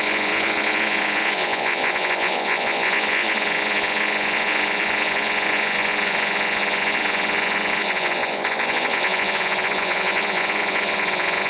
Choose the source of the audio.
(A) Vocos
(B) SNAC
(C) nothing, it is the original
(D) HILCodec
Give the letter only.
A